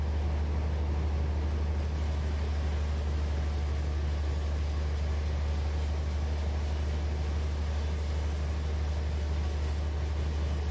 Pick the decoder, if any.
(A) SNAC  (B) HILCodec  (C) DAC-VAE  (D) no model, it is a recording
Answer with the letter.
D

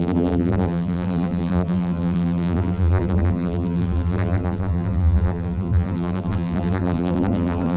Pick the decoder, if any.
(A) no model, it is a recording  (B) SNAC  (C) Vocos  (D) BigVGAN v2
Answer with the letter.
D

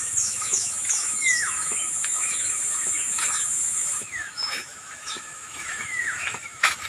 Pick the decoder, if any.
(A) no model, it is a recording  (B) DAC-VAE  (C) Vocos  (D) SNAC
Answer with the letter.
B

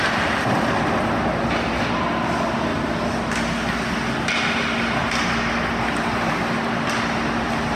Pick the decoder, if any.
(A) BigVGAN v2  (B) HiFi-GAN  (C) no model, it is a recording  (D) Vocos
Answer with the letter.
C